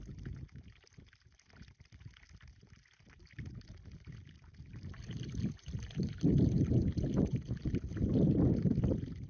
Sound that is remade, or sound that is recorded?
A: recorded